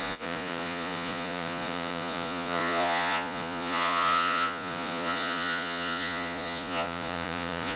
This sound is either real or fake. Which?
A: fake